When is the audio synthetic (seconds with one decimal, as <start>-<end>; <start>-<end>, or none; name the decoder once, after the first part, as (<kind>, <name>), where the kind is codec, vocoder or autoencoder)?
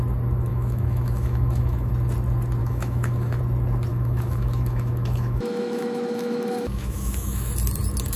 0.5-1.9 (autoencoder, DAC-VAE); 2.6-3.4; 3.9-7.5